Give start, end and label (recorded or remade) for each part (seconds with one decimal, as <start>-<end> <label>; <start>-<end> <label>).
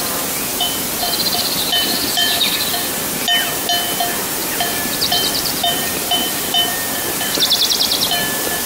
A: 0.0-0.5 recorded; 0.5-2.4 remade; 2.4-4.4 recorded; 4.4-6.4 remade; 6.4-8.7 recorded